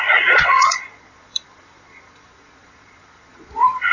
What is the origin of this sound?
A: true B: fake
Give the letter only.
B